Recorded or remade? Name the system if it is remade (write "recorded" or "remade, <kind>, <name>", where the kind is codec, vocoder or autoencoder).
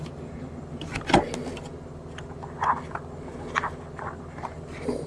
recorded